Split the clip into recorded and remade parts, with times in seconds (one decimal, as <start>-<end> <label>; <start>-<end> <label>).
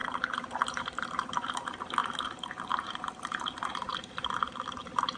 0.0-0.8 recorded; 0.8-3.9 remade; 3.9-5.2 recorded